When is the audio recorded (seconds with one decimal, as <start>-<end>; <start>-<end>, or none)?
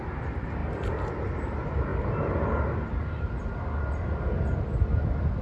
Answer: 0.0-5.4